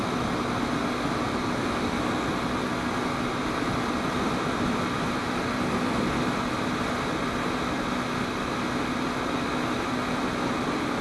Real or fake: real